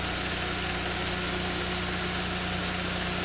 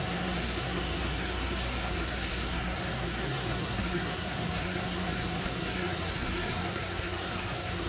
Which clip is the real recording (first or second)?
first